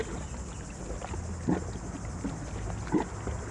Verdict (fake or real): real